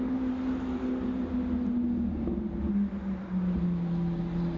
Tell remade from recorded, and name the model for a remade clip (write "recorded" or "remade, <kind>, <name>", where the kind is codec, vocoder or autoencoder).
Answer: recorded